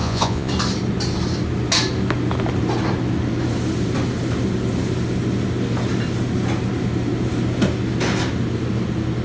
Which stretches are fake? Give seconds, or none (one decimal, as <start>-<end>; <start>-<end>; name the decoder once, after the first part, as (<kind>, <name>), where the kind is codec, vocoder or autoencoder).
0.0-0.5 (vocoder, Vocos)